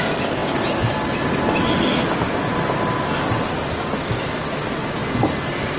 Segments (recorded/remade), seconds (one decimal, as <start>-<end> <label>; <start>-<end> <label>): 0.0-5.8 recorded